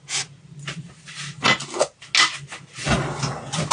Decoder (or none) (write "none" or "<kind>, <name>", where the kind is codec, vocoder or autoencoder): none